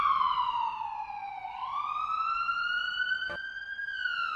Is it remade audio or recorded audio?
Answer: recorded